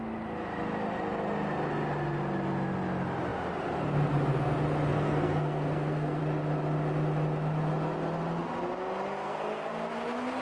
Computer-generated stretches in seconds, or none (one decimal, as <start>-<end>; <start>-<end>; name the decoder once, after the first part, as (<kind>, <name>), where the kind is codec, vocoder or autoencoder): 4.9-6.2 (codec, SNAC); 9.2-9.7